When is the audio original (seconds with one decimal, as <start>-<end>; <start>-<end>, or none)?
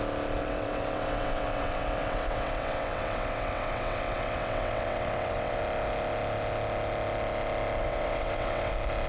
0.0-0.4; 5.6-7.8; 8.7-9.1